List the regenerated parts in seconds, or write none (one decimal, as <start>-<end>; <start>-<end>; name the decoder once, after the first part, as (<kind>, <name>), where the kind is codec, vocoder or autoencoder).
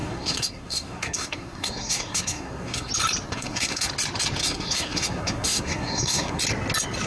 0.0-2.9 (codec, SNAC); 3.3-3.9; 4.4-6.4